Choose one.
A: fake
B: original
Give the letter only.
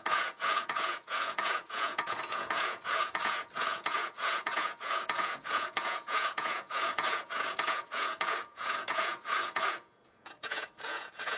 A